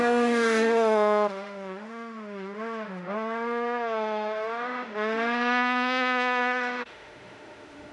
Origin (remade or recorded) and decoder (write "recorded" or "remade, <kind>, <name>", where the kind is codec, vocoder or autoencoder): remade, autoencoder, DAC-VAE